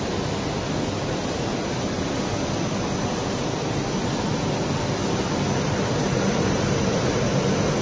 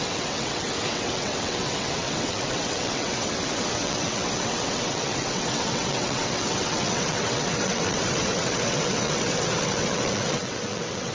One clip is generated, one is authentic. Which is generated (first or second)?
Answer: second